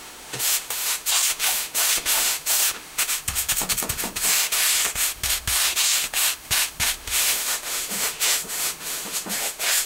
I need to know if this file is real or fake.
fake